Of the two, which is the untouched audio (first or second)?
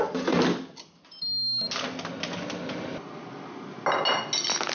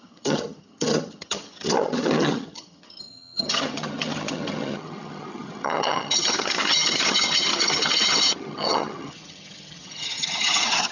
first